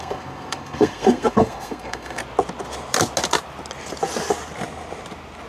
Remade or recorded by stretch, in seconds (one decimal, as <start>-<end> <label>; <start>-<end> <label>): 0.0-2.2 remade; 2.2-5.5 recorded